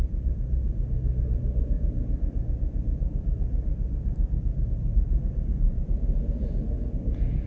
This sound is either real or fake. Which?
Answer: real